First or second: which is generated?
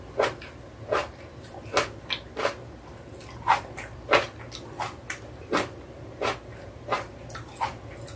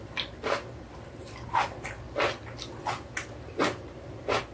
second